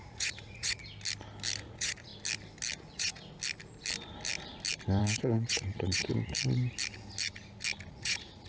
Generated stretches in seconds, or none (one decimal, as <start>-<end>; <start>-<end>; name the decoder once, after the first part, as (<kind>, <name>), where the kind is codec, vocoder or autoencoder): 0.0-0.8 (vocoder, Vocos); 1.6-2.1; 2.8-3.2; 5.0-6.1; 7.9-8.5